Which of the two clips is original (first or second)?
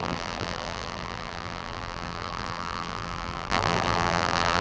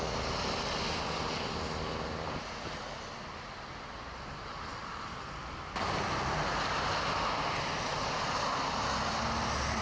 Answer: second